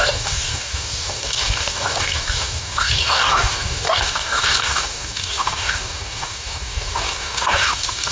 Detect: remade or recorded remade